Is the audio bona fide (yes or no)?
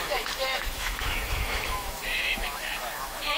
no